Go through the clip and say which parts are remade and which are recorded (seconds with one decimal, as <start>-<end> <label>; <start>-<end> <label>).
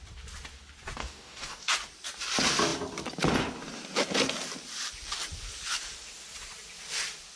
0.0-1.0 recorded; 1.0-1.7 remade; 1.7-7.4 recorded